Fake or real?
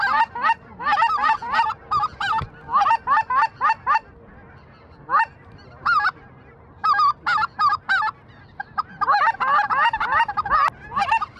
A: real